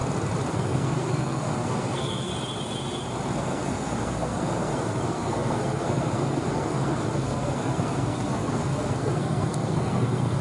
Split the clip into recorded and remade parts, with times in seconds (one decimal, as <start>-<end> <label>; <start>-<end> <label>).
0.0-0.5 recorded; 0.5-2.3 remade; 2.3-3.4 recorded; 3.4-10.4 remade